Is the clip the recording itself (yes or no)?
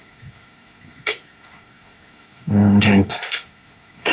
no